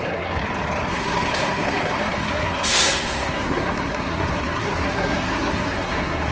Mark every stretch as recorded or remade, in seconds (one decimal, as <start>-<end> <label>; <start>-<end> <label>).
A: 0.0-0.4 remade; 0.4-0.9 recorded; 0.9-6.3 remade